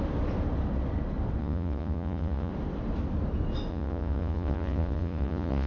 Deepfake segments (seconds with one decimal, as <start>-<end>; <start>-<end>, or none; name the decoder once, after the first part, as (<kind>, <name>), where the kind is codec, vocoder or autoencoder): 1.4-2.5 (vocoder, Vocos); 3.7-5.7